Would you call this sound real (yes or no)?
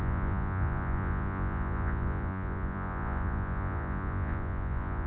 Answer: no